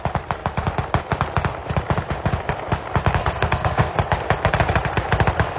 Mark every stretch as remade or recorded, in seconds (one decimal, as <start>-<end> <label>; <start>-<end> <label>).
0.0-3.2 recorded; 3.2-3.9 remade; 3.9-5.6 recorded